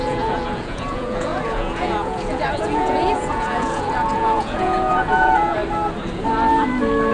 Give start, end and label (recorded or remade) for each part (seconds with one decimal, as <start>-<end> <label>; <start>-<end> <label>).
0.0-5.6 remade; 5.6-7.1 recorded